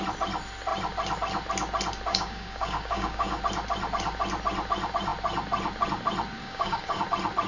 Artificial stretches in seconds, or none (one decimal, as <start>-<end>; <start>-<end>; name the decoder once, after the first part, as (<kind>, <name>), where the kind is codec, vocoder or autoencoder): 2.1-3.4 (codec, DAC); 6.4-7.0